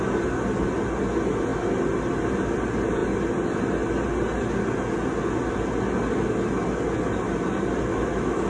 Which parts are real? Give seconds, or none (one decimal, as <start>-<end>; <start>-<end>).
0.0-7.9